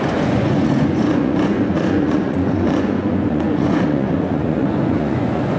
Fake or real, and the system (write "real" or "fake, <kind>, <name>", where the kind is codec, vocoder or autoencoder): fake, vocoder, Vocos